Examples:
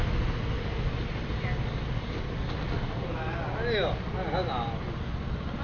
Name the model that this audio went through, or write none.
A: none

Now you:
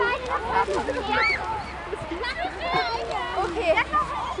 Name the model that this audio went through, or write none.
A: none